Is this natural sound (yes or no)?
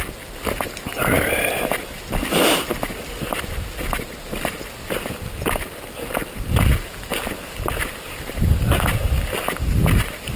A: yes